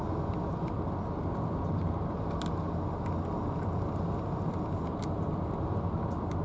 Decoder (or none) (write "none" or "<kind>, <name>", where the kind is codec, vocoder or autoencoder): none